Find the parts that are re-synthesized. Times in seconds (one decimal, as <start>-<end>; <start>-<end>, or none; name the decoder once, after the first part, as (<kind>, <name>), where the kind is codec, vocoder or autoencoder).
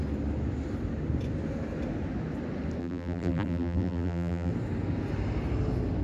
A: 2.8-4.5 (vocoder, BigVGAN v2)